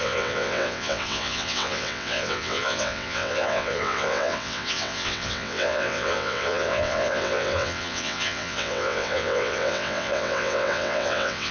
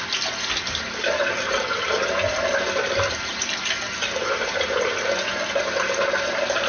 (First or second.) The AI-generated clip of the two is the first